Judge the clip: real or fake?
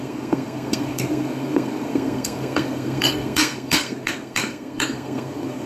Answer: fake